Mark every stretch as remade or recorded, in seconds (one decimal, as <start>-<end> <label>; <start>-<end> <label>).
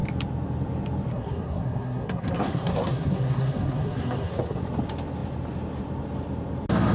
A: 0.0-1.1 recorded; 1.1-4.6 remade; 4.6-6.9 recorded